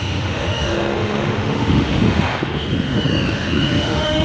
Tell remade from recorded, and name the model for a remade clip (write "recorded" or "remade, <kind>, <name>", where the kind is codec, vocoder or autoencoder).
remade, autoencoder, DAC-VAE